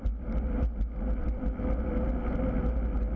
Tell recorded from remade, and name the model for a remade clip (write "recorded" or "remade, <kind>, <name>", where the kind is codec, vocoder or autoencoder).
recorded